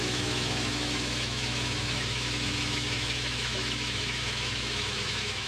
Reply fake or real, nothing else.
fake